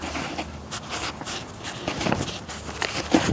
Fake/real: real